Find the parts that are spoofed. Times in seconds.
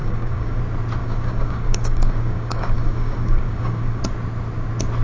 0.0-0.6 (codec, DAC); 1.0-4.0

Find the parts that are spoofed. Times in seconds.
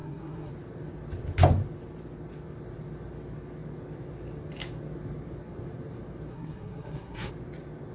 0.0-0.5 (codec, SNAC); 6.3-7.3